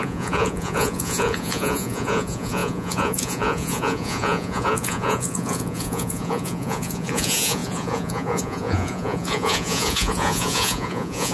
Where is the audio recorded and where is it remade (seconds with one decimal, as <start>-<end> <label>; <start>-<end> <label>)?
0.0-11.3 remade